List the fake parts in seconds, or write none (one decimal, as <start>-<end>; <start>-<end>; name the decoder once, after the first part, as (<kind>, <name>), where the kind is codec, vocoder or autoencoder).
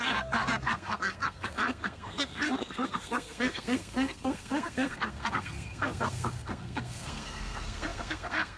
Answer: 0.0-8.6 (codec, SNAC)